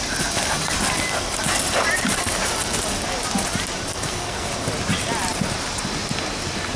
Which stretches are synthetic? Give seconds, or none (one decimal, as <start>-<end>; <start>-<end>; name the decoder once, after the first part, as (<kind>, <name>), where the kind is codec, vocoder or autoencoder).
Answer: 3.9-4.5 (codec, SNAC)